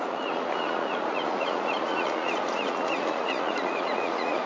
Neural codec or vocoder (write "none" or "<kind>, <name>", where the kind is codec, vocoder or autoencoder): vocoder, Vocos